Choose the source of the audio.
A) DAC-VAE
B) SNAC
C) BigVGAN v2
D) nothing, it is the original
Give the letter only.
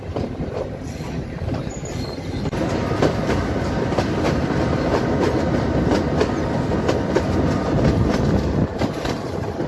C